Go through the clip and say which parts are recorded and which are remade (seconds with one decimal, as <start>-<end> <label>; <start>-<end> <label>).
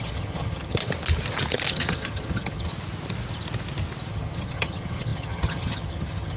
0.0-0.8 remade; 0.8-1.7 recorded; 1.7-2.7 remade; 2.7-4.1 recorded; 4.1-6.4 remade